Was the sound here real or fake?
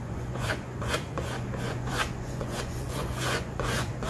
fake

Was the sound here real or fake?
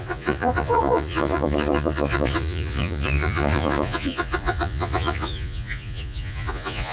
fake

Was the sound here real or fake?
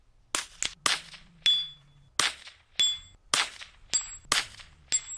real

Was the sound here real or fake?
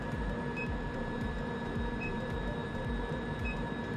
fake